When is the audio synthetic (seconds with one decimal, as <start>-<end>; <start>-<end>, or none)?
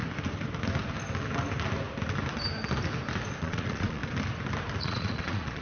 3.4-4.0; 4.8-5.6